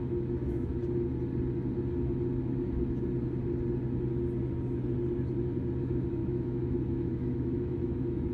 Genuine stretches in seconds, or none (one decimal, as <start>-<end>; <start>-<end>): 0.8-5.8